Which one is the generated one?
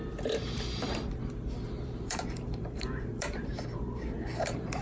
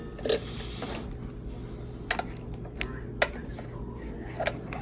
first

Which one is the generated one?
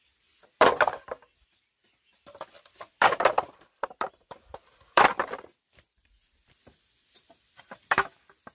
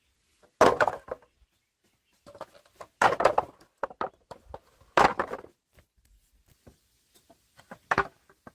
first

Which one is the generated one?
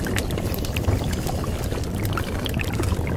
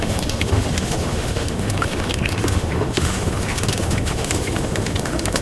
second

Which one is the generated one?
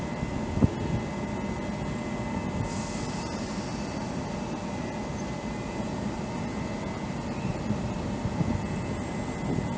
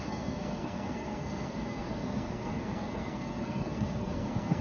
second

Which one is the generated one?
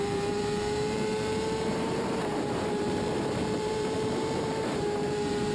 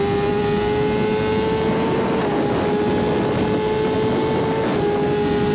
first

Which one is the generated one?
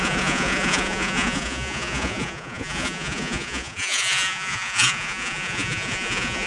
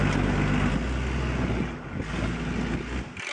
first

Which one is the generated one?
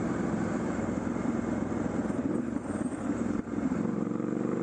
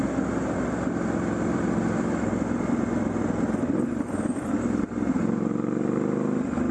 first